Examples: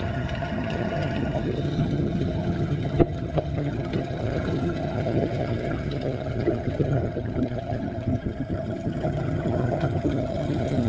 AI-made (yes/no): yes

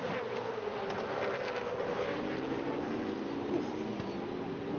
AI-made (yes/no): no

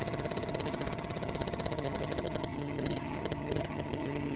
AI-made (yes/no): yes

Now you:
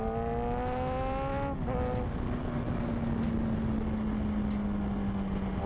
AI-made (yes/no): no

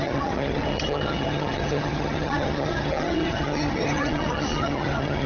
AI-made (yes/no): yes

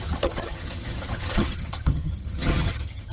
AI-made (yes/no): yes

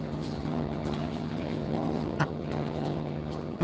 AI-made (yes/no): yes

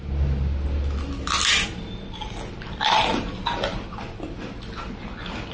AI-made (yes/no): no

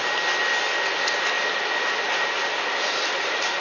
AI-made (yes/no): no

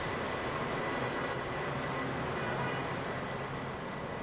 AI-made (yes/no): no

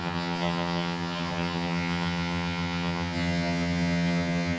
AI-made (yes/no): yes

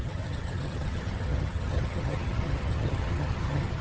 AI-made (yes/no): yes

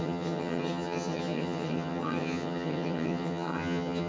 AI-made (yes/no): yes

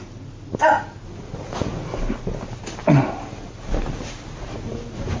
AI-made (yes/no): no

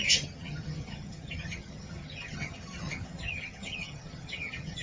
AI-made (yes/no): yes